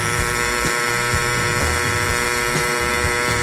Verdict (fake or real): fake